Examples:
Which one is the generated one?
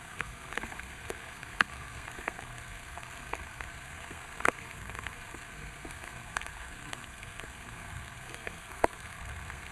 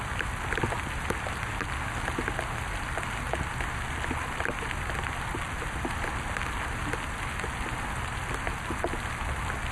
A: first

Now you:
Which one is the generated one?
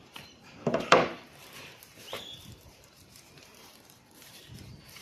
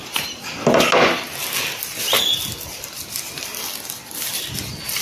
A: first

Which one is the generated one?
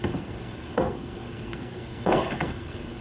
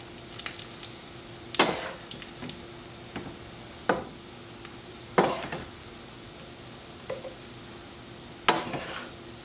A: first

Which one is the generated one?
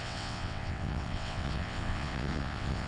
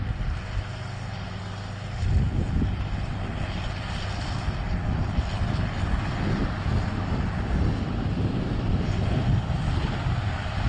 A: first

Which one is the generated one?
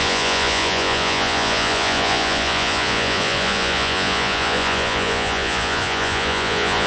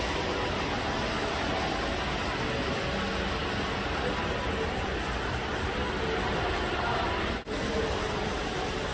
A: first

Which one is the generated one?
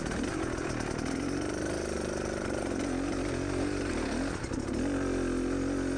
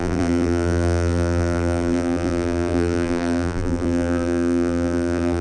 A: second